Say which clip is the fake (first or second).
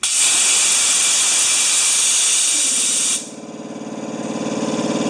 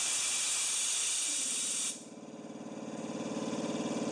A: second